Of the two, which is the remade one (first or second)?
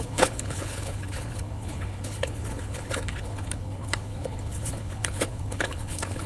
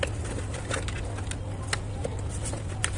first